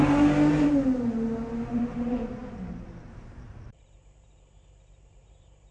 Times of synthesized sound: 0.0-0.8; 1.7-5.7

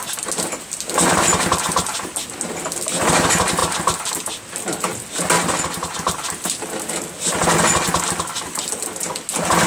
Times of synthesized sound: none

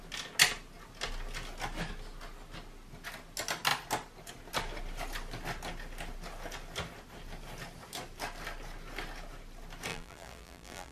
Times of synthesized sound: 9.9-10.9

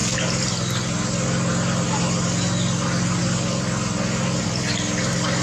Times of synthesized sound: none

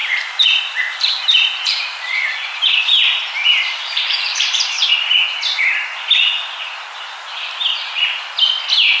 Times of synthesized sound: 0.0-4.9